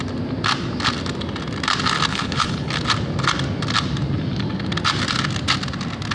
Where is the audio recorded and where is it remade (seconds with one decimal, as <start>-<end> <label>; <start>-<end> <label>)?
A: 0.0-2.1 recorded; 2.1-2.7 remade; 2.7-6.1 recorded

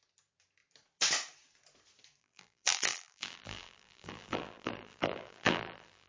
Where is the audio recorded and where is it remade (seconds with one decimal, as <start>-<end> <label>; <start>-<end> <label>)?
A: 0.0-2.2 recorded; 2.2-6.1 remade

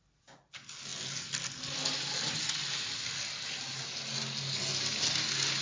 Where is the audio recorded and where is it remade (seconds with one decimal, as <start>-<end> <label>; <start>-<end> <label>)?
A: 0.0-5.6 recorded

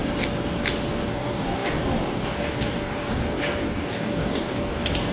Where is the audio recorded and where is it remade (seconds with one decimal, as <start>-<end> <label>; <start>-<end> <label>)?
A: 0.0-1.1 recorded; 1.1-5.1 remade

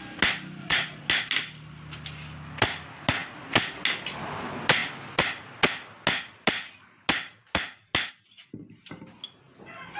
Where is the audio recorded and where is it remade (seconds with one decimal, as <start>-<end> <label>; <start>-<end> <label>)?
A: 0.0-0.6 recorded; 0.6-1.1 remade; 1.1-10.0 recorded

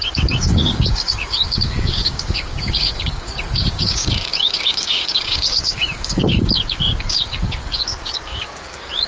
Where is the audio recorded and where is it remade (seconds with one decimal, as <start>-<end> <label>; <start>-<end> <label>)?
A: 0.0-9.1 remade

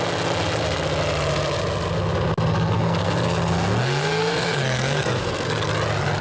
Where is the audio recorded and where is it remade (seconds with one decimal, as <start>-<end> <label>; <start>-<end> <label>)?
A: 0.0-2.5 recorded; 2.5-5.7 remade; 5.7-6.2 recorded